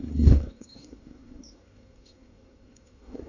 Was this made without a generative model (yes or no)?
no